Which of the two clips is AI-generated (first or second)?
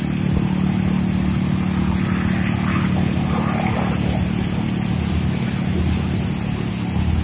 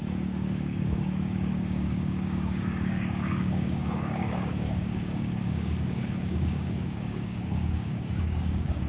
second